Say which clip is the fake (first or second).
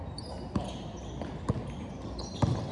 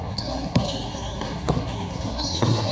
second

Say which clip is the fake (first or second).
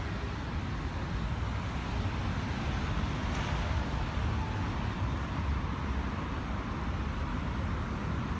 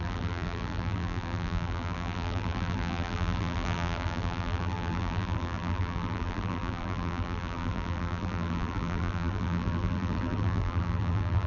second